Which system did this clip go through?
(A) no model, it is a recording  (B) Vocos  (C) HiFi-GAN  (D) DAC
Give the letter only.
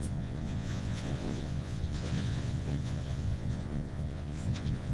B